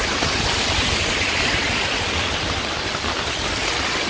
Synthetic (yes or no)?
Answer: no